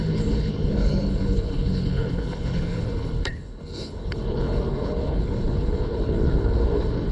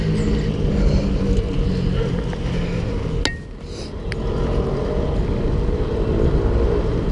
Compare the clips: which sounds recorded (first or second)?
second